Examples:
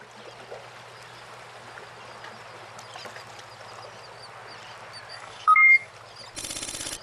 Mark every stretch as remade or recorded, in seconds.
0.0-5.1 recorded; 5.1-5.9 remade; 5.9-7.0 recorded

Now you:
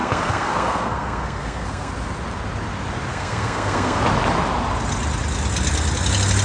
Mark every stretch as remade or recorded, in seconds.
0.0-1.9 remade; 1.9-3.1 recorded; 3.1-4.0 remade; 4.0-6.4 recorded

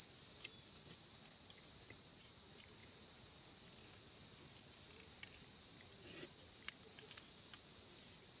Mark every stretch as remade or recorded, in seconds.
0.0-2.8 recorded; 2.8-3.6 remade; 3.6-8.4 recorded

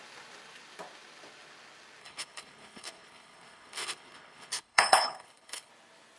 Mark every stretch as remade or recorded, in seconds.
0.0-2.0 recorded; 2.0-5.7 remade; 5.7-6.2 recorded

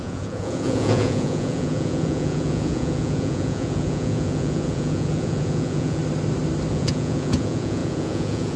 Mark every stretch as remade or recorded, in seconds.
0.0-6.0 remade; 6.0-6.7 recorded; 6.7-8.6 remade

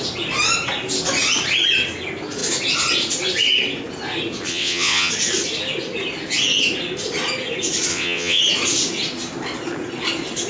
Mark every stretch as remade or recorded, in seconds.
0.0-4.5 recorded; 4.5-5.1 remade; 5.1-7.9 recorded; 7.9-8.4 remade; 8.4-10.5 recorded